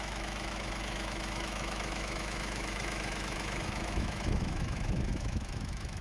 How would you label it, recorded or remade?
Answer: remade